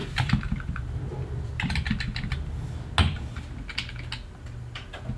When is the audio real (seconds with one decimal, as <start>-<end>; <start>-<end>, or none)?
2.3-5.2